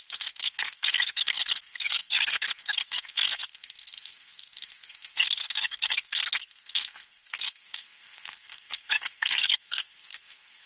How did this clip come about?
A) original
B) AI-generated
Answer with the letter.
B